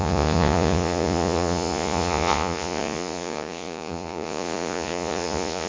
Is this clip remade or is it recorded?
remade